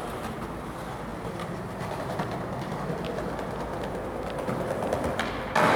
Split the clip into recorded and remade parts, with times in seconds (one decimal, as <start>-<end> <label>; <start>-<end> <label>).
0.0-1.1 recorded; 1.1-2.4 remade; 2.4-5.8 recorded